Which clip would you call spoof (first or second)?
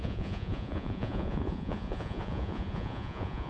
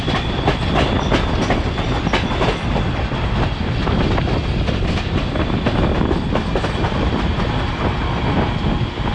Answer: first